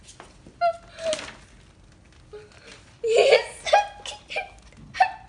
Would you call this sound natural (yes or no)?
yes